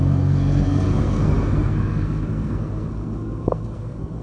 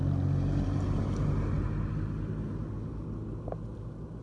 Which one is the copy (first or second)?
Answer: first